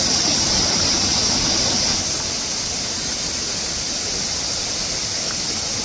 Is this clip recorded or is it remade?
recorded